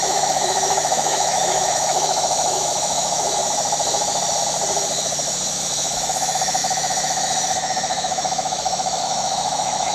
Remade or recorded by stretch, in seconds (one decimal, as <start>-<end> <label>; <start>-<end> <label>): 0.0-3.4 remade; 3.4-5.5 recorded; 5.5-9.9 remade